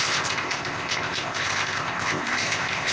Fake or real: fake